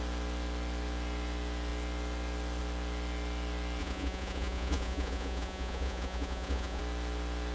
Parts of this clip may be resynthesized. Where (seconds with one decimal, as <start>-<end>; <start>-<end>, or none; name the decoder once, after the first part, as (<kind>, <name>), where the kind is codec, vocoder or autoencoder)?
3.8-6.8 (vocoder, Vocos)